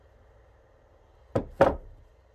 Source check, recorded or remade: recorded